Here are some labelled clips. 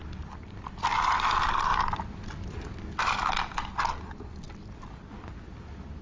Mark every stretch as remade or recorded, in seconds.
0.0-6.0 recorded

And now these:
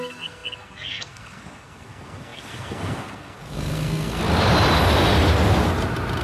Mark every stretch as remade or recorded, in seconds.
0.0-4.2 remade; 4.2-6.2 recorded

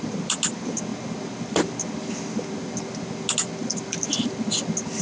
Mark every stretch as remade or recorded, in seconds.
0.0-5.0 recorded

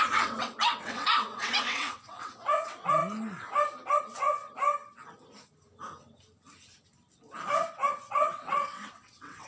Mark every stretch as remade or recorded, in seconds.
0.0-3.0 remade; 3.0-4.0 recorded; 4.0-4.4 remade; 4.4-7.9 recorded; 7.9-9.5 remade

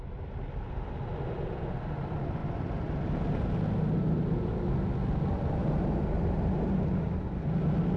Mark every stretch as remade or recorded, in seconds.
0.0-5.6 recorded; 5.6-6.8 remade; 6.8-8.0 recorded